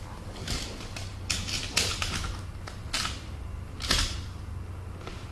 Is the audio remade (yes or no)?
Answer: no